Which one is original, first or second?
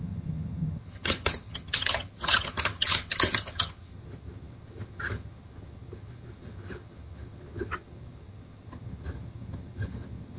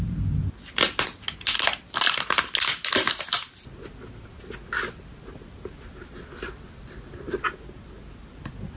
second